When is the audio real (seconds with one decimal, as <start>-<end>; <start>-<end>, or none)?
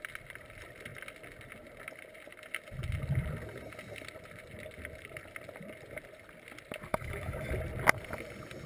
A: 0.0-6.9; 7.5-8.7